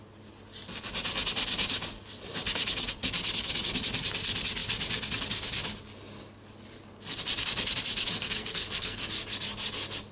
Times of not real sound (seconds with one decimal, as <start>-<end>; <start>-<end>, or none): 8.1-9.1